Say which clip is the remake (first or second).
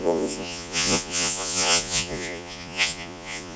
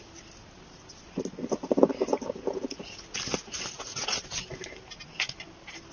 first